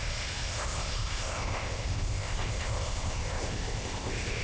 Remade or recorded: remade